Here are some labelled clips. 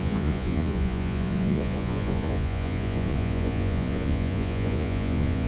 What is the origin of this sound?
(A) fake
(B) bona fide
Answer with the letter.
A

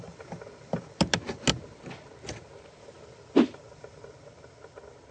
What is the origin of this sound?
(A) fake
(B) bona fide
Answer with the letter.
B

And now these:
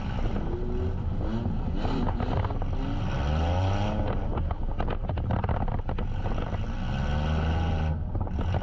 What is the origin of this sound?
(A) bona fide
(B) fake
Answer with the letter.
A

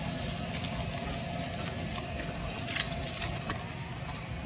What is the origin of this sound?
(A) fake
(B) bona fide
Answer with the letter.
B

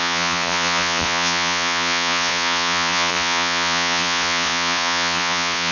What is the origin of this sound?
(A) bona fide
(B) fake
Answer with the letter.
B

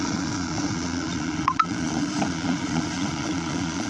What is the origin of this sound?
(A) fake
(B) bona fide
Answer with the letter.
A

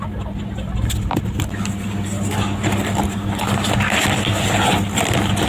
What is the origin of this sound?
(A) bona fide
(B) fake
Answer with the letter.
A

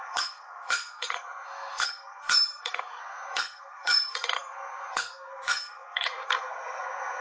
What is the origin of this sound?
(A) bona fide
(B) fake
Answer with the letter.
B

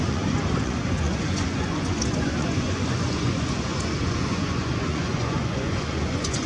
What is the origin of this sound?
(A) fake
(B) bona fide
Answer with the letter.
A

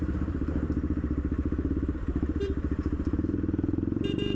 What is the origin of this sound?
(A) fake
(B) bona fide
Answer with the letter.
A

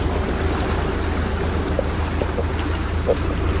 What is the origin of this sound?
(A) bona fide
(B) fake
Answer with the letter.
A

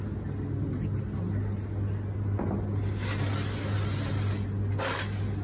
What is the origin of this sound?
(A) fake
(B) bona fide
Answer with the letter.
B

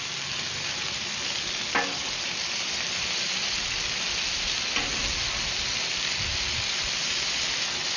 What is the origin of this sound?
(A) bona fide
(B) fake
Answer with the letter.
A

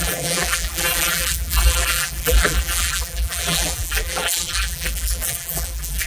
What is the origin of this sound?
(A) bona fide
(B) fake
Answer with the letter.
B